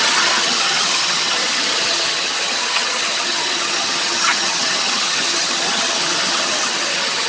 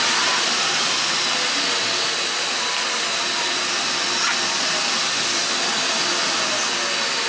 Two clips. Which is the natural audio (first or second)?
second